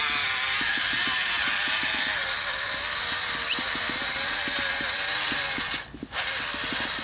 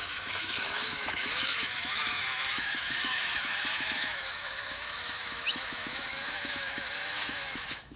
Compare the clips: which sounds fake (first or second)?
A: second